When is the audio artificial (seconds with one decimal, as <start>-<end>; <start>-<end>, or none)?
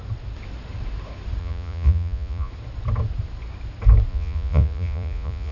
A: 1.4-2.5; 4.1-5.5